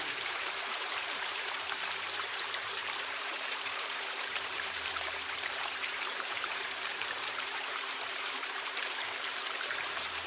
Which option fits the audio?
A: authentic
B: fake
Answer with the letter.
B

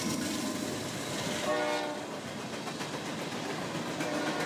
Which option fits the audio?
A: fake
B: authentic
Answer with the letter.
B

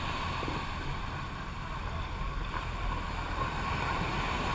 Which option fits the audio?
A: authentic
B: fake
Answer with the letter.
A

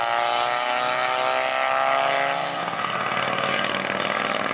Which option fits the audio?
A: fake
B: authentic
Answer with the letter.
B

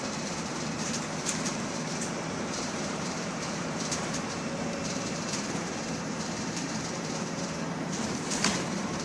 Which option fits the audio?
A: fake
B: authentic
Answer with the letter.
A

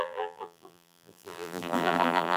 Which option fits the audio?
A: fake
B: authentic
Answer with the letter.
A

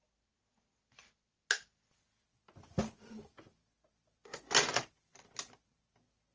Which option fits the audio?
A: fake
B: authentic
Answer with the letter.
B